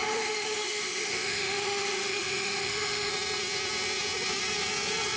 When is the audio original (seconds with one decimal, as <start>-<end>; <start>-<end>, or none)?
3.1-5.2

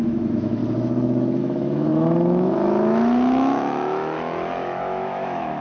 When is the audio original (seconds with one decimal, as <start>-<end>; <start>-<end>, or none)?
0.6-1.4

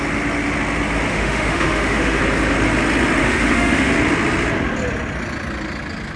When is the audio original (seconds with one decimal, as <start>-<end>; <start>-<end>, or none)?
0.0-1.1; 2.2-3.2; 3.9-6.2